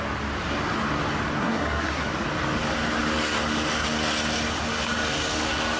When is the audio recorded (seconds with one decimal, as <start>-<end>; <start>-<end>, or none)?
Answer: 0.0-1.4; 2.1-5.8